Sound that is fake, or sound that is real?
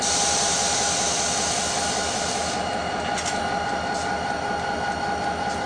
real